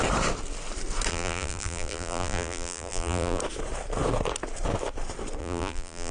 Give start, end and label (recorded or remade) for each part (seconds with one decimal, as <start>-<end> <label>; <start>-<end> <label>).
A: 0.0-1.1 recorded; 1.1-3.4 remade; 3.4-5.4 recorded; 5.4-6.1 remade